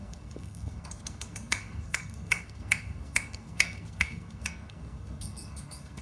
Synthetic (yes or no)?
yes